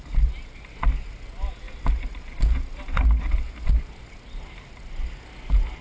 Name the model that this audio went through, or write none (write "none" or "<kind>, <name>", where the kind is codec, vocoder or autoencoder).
none